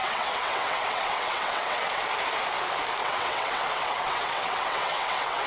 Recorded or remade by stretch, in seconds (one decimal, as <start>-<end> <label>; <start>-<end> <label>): 0.0-2.1 remade; 2.1-3.0 recorded; 3.0-5.5 remade